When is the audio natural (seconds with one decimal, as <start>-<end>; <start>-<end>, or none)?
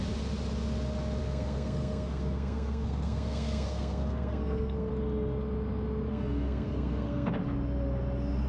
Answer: 0.0-1.2; 4.9-6.1; 7.3-8.5